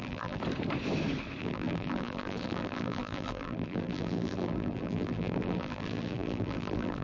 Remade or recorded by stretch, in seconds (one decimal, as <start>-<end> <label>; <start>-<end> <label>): 0.0-0.4 remade; 0.4-1.4 recorded; 1.4-7.0 remade